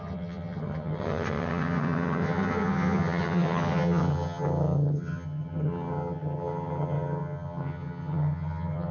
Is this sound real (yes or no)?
no